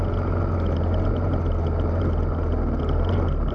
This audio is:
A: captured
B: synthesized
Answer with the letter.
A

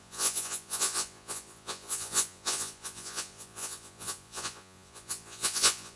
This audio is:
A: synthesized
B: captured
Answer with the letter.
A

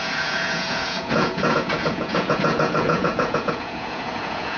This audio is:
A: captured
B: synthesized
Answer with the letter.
B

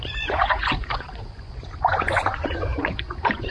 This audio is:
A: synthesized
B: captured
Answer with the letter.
A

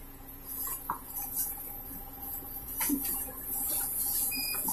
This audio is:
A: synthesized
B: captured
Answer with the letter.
A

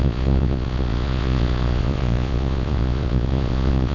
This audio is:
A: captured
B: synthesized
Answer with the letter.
B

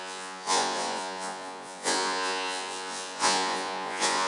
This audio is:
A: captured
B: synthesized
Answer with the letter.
B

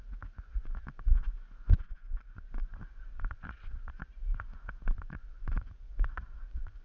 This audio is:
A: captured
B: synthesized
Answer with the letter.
B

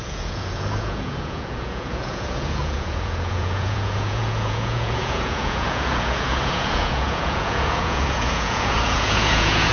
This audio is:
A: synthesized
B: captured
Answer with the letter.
A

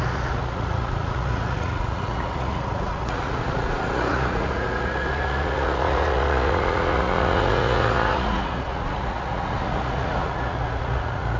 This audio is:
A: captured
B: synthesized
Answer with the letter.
B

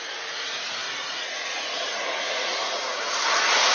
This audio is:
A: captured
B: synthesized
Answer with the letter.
B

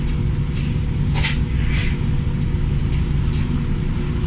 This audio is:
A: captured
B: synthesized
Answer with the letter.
A